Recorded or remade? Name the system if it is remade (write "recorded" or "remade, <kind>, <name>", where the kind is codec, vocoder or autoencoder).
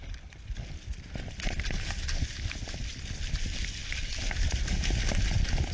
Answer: recorded